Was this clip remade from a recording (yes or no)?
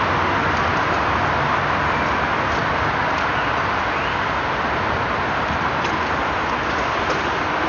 no